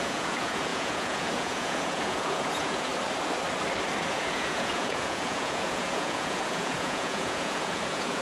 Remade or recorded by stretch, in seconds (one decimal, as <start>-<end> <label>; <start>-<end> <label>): 0.0-2.9 remade; 2.9-4.1 recorded; 4.1-8.2 remade

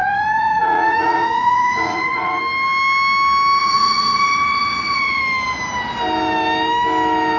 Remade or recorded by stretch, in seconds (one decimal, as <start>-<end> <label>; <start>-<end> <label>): 0.0-2.4 remade; 2.4-3.6 recorded; 3.6-5.2 remade; 5.2-7.4 recorded

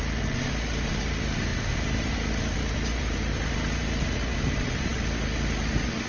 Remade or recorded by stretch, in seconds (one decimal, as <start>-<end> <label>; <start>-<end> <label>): 0.0-6.1 recorded

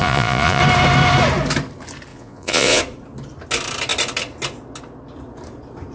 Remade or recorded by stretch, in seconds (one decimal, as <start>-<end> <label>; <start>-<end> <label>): 0.0-0.6 remade; 0.6-2.1 recorded; 2.1-2.8 remade; 2.8-5.9 recorded

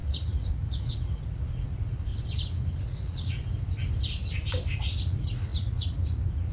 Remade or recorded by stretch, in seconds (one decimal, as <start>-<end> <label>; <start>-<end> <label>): 0.0-2.1 remade; 2.1-2.8 recorded; 2.8-3.4 remade; 3.4-4.8 recorded; 4.8-6.5 remade

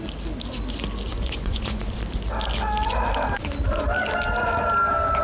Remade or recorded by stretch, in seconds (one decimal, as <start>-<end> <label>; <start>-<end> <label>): 0.0-1.1 recorded; 1.1-2.0 remade; 2.0-5.2 recorded

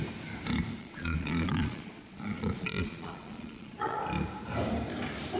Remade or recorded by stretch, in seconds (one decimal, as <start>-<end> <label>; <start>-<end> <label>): 0.0-0.8 recorded; 0.8-4.0 remade; 4.0-5.4 recorded